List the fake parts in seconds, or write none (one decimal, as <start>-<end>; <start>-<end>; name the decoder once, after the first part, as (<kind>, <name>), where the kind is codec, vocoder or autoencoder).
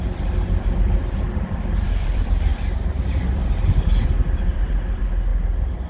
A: 0.0-5.3 (vocoder, BigVGAN v2)